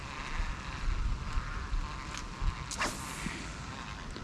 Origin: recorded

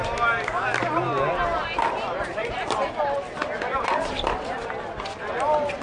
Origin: recorded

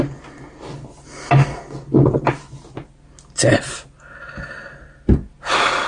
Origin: recorded